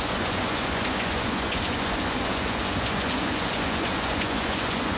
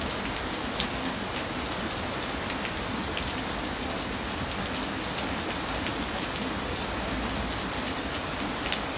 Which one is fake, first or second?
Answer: first